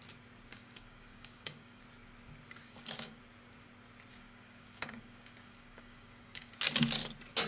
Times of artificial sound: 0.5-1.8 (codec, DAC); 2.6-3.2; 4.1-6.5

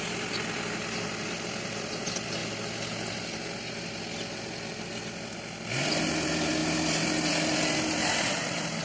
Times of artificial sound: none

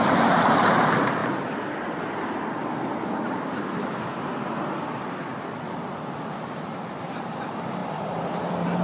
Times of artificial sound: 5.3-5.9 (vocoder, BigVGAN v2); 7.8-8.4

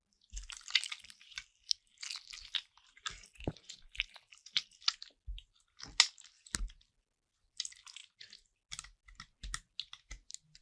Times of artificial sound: none